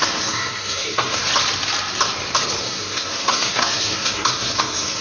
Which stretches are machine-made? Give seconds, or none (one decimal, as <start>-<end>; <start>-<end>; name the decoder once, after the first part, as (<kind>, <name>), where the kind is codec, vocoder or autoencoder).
0.0-1.2 (codec, SNAC); 2.6-5.0